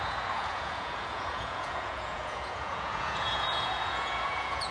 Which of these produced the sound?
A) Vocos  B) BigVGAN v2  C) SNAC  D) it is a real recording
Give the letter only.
A